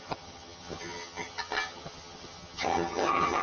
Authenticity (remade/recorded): remade